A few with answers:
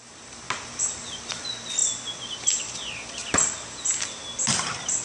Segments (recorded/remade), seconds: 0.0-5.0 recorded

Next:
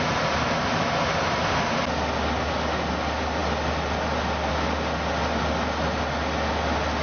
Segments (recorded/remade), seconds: 0.0-7.0 recorded

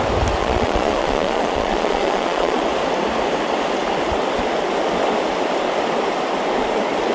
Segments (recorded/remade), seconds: 0.0-0.4 recorded; 0.4-2.6 remade; 2.6-7.1 recorded

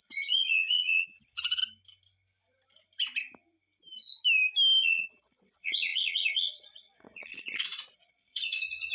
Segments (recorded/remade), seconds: 0.0-1.6 remade; 1.6-4.8 recorded; 4.8-8.9 remade

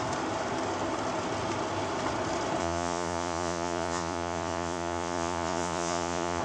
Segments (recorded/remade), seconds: 0.0-2.6 recorded; 2.6-6.4 remade